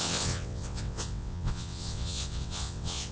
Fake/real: fake